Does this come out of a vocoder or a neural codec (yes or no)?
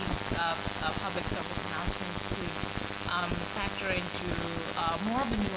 no